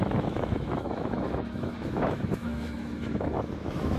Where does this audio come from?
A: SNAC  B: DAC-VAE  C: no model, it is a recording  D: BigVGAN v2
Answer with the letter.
B